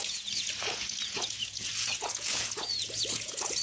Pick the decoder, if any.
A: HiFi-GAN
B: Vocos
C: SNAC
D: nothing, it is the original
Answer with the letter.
B